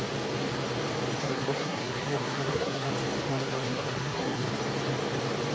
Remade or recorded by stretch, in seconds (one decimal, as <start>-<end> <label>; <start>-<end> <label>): 0.0-1.2 recorded; 1.2-2.9 remade; 2.9-3.3 recorded; 3.3-4.5 remade; 4.5-5.5 recorded